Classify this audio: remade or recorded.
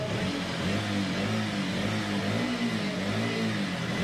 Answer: recorded